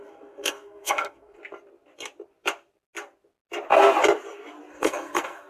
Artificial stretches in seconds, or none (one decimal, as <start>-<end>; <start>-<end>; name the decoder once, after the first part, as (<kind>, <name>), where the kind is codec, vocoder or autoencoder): 0.0-1.4 (codec, SNAC); 4.7-5.5